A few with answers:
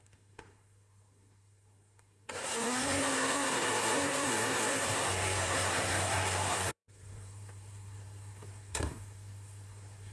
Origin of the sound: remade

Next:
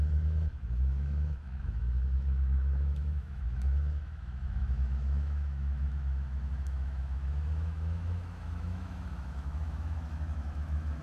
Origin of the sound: remade